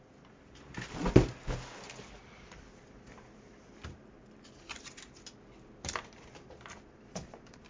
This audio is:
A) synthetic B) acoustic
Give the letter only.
B